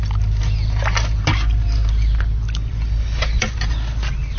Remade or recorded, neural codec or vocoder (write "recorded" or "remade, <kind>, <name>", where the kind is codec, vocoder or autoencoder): recorded